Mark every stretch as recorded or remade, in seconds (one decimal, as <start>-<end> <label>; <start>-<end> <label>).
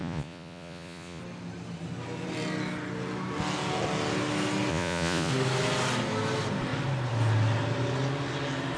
0.0-1.2 remade; 1.2-4.7 recorded; 4.7-5.3 remade; 5.3-8.8 recorded